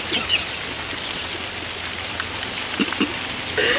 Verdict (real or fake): real